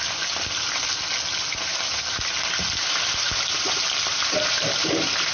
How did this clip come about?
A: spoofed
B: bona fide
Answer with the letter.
B